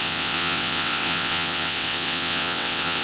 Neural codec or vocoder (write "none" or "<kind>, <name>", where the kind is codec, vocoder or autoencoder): vocoder, WaveNeXt